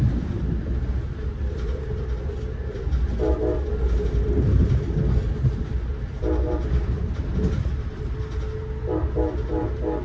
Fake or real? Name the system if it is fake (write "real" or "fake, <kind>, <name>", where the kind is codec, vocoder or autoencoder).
real